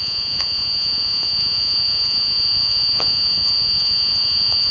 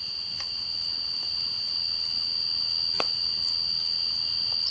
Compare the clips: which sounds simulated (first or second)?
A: first